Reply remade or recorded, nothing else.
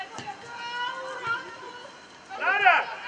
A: recorded